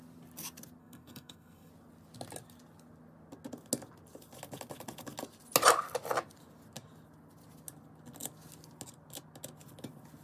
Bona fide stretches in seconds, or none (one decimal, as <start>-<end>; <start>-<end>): 0.0-0.8; 1.7-10.2